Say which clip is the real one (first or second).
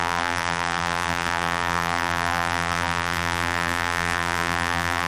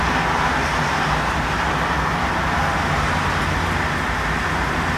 second